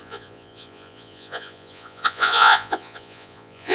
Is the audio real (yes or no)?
no